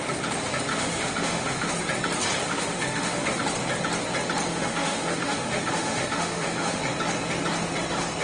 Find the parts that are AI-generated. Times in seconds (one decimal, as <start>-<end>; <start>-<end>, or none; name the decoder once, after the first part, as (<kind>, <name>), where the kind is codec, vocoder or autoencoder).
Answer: 0.7-1.7 (autoencoder, DAC-VAE); 2.4-3.4; 4.5-6.8